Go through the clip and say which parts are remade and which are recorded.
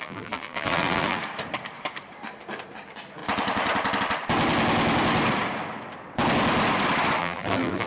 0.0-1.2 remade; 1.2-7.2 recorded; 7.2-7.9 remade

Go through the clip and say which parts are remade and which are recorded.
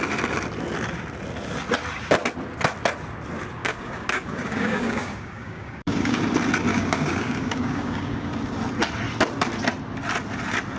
0.0-3.6 recorded; 3.6-6.2 remade; 6.2-6.7 recorded; 6.7-8.3 remade; 8.3-10.8 recorded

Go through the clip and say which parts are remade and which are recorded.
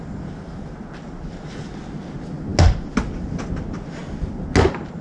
0.0-5.0 recorded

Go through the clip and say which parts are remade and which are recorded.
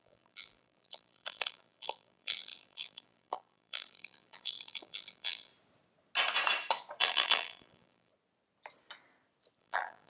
0.0-5.5 remade; 5.5-7.0 recorded; 7.0-8.1 remade; 8.1-9.6 recorded; 9.6-10.1 remade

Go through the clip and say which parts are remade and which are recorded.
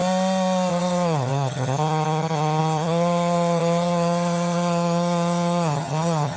0.0-0.7 recorded; 0.7-6.4 remade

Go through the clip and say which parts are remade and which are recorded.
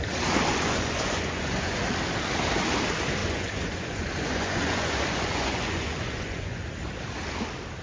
0.0-0.5 recorded; 0.5-1.8 remade; 1.8-3.2 recorded; 3.2-6.8 remade; 6.8-7.8 recorded